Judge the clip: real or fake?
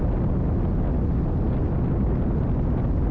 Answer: real